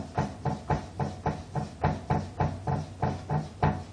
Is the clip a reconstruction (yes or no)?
no